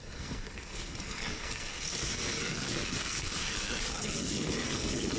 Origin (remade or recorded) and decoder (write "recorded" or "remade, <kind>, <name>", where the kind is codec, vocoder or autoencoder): remade, codec, SNAC